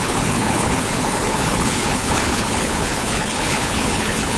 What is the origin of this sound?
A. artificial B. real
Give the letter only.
A